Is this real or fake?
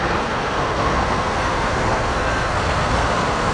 fake